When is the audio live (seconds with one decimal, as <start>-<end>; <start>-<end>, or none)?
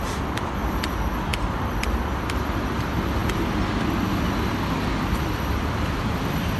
none